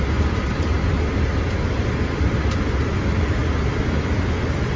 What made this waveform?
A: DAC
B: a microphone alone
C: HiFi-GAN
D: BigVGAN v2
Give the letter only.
B